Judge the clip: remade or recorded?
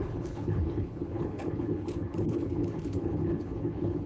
remade